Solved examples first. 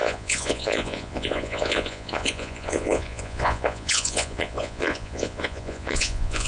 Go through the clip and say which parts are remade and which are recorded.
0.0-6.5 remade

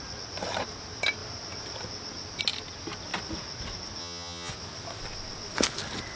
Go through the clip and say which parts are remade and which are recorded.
0.0-4.0 recorded; 4.0-4.5 remade; 4.5-6.2 recorded

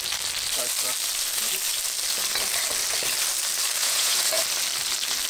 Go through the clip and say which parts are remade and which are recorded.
0.0-3.8 recorded; 3.8-4.4 remade; 4.4-5.3 recorded